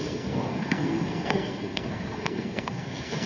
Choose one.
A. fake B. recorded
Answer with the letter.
A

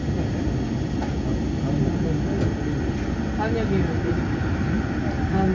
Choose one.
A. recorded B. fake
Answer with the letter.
A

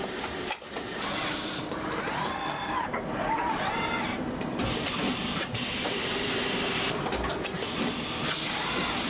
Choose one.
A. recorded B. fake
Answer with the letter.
B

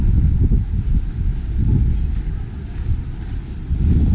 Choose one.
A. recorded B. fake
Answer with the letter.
A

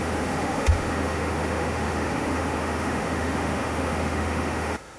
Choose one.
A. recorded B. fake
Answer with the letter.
B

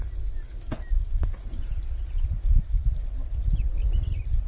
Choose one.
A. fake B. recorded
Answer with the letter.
B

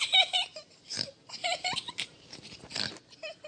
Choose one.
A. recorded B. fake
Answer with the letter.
B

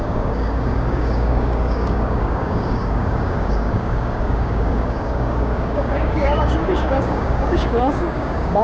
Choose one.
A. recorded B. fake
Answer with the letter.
B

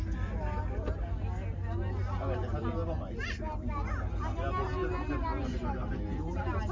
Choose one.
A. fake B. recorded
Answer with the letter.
B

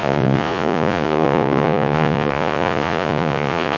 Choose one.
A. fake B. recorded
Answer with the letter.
A